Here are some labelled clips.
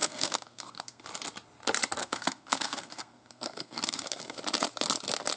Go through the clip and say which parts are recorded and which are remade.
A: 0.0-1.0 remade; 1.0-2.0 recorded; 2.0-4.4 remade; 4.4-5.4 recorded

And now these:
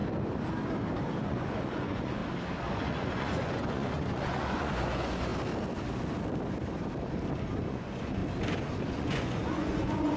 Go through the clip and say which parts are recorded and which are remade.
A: 0.0-1.2 recorded; 1.2-2.2 remade; 2.2-2.7 recorded; 2.7-5.3 remade; 5.3-7.7 recorded; 7.7-8.2 remade; 8.2-8.9 recorded; 8.9-10.2 remade

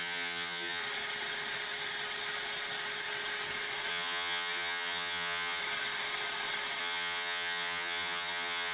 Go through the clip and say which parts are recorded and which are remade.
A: 0.0-0.8 remade; 0.8-3.9 recorded; 3.9-5.6 remade; 5.6-6.8 recorded; 6.8-8.7 remade

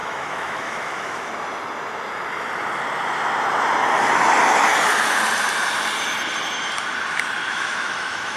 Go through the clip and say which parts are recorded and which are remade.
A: 0.0-1.3 remade; 1.3-7.4 recorded; 7.4-8.4 remade

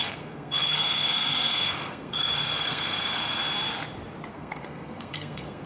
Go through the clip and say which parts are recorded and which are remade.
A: 0.0-3.4 remade; 3.4-4.3 recorded; 4.3-5.7 remade

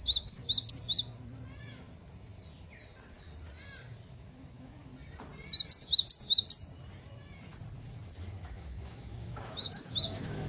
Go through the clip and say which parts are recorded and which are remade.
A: 0.0-0.4 remade; 0.4-4.1 recorded; 4.1-4.9 remade; 4.9-8.2 recorded; 8.2-10.5 remade